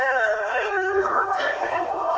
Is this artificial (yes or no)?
yes